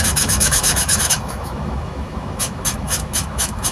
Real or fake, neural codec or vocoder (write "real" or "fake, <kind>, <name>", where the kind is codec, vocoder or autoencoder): fake, autoencoder, DAC-VAE